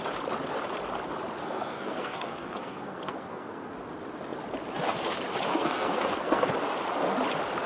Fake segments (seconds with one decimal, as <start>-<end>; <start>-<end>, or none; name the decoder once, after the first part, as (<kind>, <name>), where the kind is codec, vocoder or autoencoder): 1.4-3.7 (codec, SNAC); 5.5-6.5

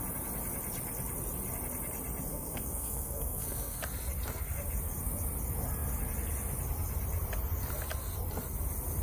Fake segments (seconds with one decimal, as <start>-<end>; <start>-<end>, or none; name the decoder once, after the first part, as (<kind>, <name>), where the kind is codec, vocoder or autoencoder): 2.3-3.8 (codec, SNAC)